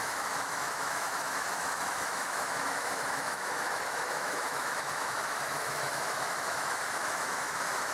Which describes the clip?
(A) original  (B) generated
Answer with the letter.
B